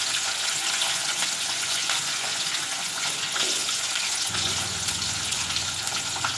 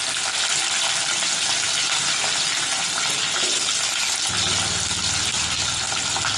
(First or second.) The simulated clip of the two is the first